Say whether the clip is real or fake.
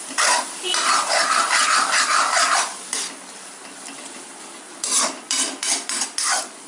fake